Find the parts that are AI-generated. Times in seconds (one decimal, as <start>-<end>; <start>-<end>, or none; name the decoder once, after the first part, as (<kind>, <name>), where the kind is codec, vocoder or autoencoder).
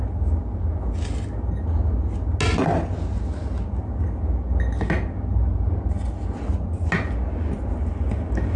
none